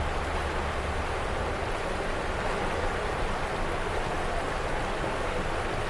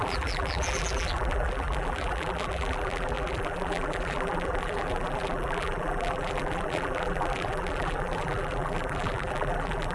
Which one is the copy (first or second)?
second